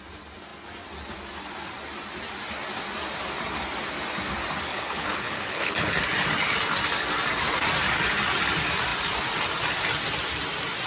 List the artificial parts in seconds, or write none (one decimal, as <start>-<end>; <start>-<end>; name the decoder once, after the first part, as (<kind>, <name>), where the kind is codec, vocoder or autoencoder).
4.7-5.9 (codec, HILCodec)